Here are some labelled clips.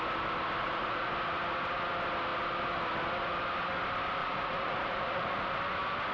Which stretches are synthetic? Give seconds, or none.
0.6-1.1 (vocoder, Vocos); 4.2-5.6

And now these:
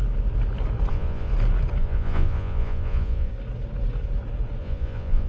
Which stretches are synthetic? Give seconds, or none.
0.9-1.3 (vocoder, Vocos); 1.8-3.3; 4.6-5.3

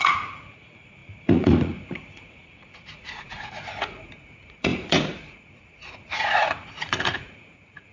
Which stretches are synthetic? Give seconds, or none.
0.0-7.9 (vocoder, Vocos)